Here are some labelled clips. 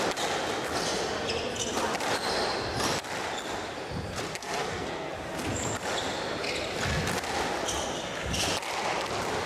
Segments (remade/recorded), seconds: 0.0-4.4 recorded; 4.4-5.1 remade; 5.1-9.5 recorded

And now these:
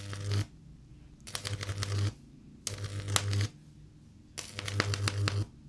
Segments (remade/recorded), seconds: 0.0-5.7 recorded

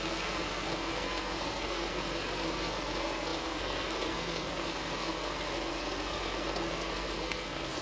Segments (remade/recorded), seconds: 0.0-7.8 remade